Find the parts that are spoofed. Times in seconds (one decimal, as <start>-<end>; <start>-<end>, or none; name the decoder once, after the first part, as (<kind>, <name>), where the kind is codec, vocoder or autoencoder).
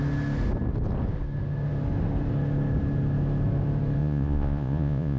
4.0-5.2 (vocoder, Vocos)